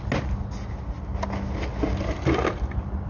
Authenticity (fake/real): real